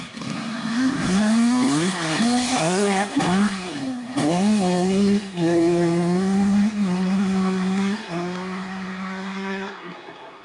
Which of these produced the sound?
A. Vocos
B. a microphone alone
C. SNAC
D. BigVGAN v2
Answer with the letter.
C